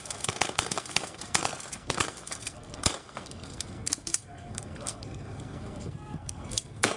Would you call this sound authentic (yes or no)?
no